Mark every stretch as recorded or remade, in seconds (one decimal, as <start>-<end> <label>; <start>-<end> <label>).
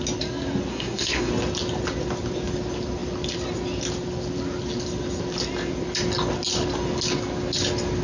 0.0-0.7 recorded; 0.7-1.3 remade; 1.3-8.0 recorded